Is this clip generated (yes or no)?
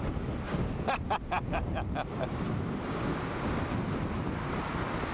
no